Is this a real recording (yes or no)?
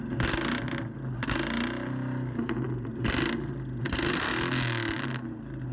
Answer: yes